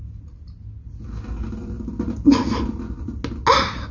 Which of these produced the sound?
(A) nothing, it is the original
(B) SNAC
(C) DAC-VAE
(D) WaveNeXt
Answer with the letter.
A